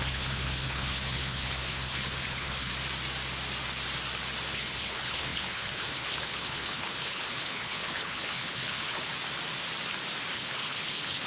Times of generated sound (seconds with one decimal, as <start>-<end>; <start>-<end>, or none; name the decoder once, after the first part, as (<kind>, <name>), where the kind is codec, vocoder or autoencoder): 0.0-2.7 (codec, HILCodec); 4.5-9.1; 10.3-11.3